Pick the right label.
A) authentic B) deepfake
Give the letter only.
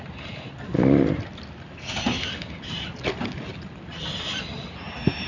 A